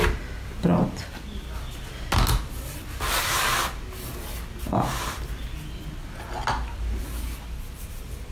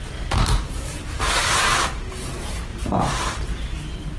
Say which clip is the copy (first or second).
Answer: second